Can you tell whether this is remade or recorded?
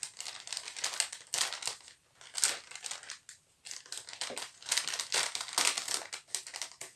recorded